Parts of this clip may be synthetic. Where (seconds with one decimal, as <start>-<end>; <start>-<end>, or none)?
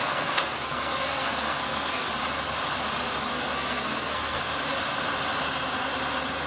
0.0-2.1; 3.3-4.4